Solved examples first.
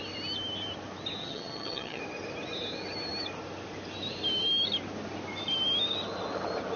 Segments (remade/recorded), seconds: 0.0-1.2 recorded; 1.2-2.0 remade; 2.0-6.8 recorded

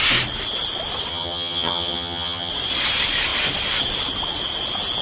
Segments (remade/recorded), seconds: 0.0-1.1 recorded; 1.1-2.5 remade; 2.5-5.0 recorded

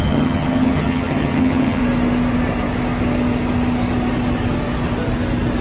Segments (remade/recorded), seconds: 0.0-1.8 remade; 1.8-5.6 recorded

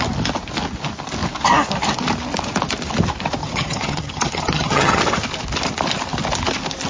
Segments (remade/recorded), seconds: 0.0-3.4 recorded; 3.4-5.0 remade; 5.0-6.9 recorded